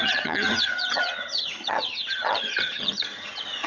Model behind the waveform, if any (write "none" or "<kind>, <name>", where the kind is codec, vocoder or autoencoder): vocoder, HiFi-GAN